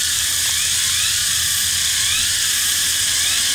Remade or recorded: recorded